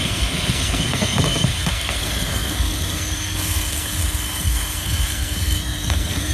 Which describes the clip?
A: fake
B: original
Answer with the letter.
A